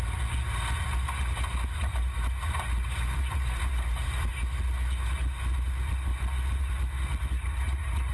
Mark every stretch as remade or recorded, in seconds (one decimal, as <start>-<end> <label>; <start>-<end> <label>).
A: 0.0-1.9 recorded; 1.9-4.3 remade; 4.3-8.1 recorded